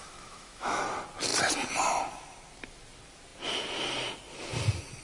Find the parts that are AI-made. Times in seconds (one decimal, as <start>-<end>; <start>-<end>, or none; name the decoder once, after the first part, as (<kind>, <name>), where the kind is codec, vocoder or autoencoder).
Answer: 0.0-0.8 (autoencoder, DAC-VAE)